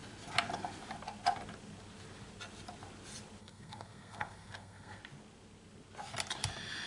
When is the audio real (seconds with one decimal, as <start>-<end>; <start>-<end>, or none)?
0.0-3.4; 5.0-6.9